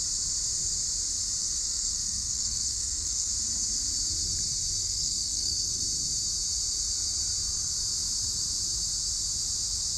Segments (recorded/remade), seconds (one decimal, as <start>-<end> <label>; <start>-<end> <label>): 0.0-1.4 recorded; 1.4-3.3 remade; 3.3-4.8 recorded; 4.8-5.8 remade; 5.8-10.0 recorded